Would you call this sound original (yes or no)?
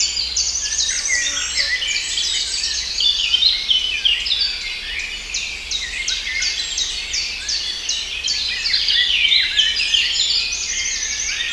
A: yes